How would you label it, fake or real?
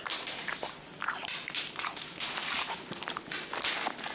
real